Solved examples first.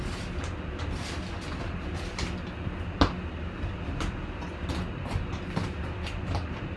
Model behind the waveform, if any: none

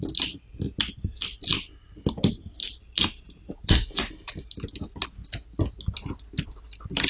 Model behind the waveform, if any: none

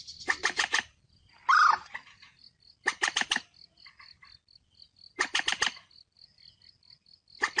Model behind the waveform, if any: none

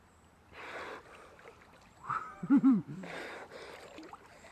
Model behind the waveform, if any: vocoder, BigVGAN v2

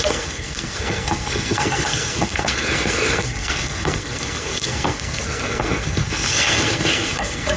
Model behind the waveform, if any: codec, SNAC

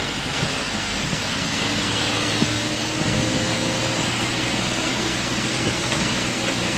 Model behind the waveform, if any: codec, SNAC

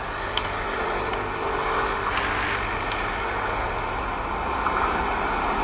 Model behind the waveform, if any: none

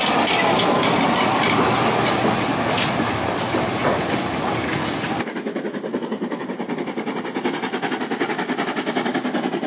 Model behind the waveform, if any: none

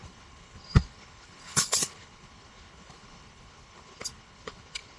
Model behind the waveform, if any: codec, HILCodec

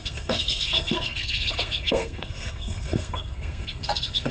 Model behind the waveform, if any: codec, SNAC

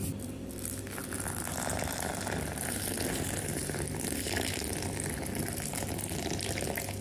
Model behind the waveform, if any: none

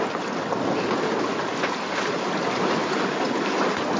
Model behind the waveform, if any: none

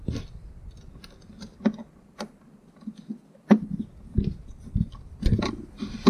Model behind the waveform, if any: none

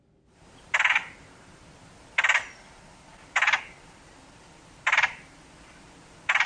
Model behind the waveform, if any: vocoder, BigVGAN v2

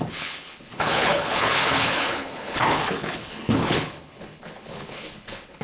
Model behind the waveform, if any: codec, HILCodec